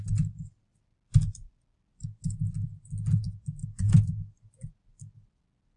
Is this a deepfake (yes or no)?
no